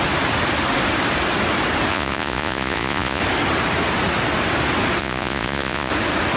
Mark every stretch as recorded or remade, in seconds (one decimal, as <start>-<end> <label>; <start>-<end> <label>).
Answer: 0.0-1.9 recorded; 1.9-3.2 remade; 3.2-5.0 recorded; 5.0-5.9 remade; 5.9-6.4 recorded